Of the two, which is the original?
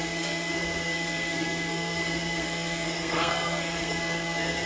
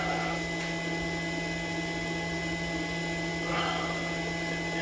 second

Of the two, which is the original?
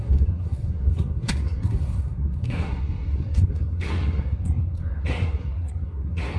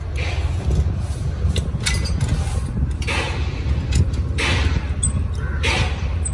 second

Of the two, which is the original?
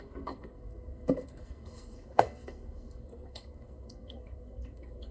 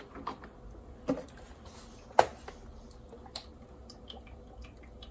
second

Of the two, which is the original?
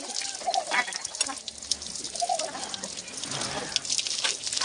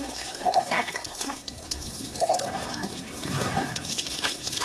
first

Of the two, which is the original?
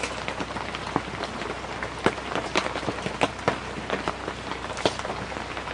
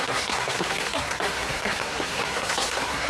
first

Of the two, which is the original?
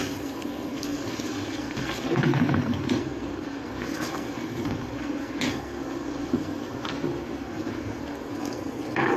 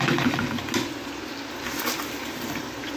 second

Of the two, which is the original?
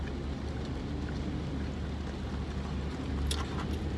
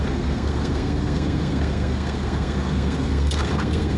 first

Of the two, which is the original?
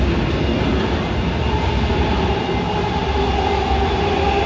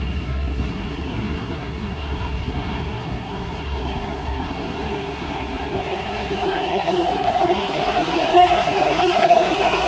first